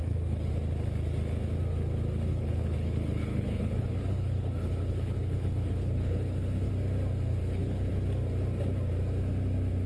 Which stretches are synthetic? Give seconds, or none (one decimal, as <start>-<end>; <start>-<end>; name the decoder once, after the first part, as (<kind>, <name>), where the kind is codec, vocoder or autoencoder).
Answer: 0.0-0.5 (codec, HILCodec); 2.3-6.7; 7.3-7.9

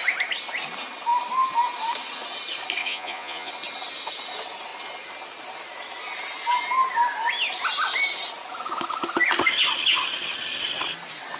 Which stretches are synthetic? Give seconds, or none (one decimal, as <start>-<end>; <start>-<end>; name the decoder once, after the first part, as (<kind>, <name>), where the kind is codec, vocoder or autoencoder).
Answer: 2.8-3.5 (vocoder, Vocos)

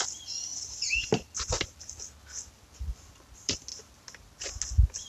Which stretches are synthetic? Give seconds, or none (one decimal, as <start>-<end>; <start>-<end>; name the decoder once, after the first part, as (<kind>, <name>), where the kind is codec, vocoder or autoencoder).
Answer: none